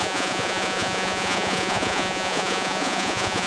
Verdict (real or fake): fake